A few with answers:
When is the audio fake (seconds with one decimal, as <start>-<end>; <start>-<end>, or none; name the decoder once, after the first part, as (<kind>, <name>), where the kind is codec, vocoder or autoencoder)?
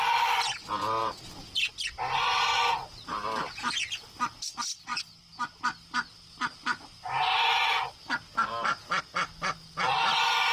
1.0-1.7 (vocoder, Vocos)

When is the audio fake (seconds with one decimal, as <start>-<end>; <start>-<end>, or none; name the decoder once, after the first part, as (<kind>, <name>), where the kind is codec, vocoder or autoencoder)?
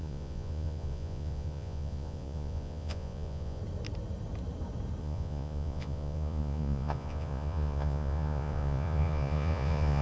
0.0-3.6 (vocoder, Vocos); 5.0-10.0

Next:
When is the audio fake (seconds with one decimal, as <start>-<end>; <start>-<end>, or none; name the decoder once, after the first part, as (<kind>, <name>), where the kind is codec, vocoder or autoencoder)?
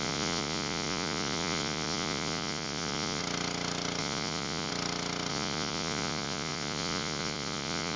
0.0-3.2 (vocoder, Vocos); 4.0-4.7; 5.3-8.0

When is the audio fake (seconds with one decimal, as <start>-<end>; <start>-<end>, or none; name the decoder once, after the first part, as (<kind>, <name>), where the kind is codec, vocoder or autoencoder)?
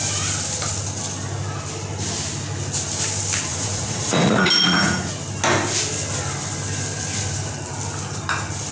3.5-5.1 (vocoder, Vocos)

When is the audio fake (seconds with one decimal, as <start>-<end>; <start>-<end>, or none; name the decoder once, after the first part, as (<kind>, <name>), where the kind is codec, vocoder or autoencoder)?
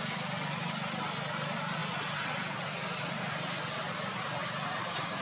none